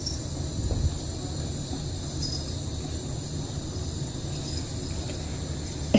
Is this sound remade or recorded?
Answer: recorded